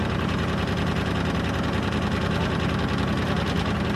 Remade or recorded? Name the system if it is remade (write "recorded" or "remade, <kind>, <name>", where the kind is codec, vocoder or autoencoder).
recorded